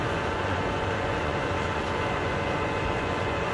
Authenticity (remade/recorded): remade